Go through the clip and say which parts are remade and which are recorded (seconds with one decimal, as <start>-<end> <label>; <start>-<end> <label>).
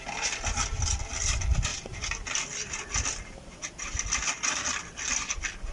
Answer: 0.0-5.7 recorded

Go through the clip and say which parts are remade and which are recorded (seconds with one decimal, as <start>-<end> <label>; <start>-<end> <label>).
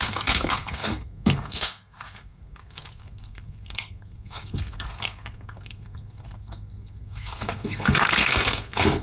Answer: 0.0-9.0 remade